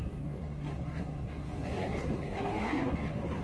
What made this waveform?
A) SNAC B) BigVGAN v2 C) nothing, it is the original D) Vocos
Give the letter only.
A